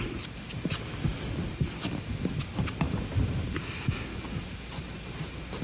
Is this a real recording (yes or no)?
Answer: yes